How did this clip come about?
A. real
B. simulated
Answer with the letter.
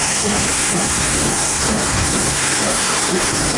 B